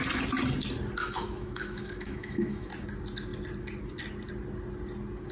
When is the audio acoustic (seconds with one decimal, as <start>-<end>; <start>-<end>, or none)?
0.0-1.0; 2.7-5.3

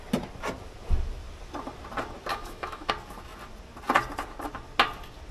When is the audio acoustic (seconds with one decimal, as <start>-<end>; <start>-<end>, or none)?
0.0-2.3; 2.9-5.3

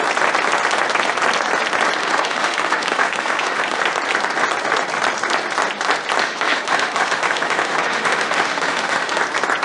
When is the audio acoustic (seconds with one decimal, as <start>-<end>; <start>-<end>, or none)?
0.0-2.0; 3.8-6.2; 9.2-9.6

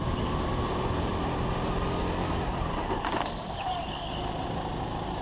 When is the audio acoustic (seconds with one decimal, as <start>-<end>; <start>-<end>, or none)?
0.0-5.2

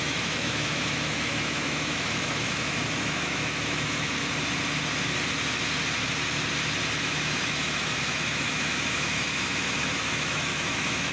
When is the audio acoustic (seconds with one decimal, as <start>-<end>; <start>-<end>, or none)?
4.2-7.0

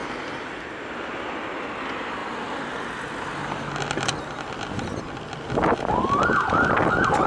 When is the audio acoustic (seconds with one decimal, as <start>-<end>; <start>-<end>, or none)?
0.0-7.3

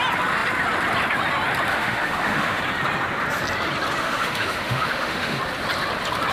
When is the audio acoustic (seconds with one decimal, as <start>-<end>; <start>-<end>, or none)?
0.0-1.7; 2.6-4.0; 5.4-6.3